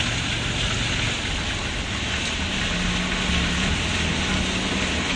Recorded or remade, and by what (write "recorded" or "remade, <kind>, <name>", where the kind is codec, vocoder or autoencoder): recorded